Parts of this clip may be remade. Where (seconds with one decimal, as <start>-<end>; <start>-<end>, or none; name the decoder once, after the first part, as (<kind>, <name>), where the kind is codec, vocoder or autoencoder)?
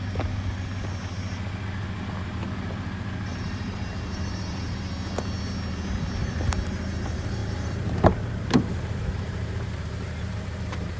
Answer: 3.3-4.8 (vocoder, BigVGAN v2); 7.4-11.0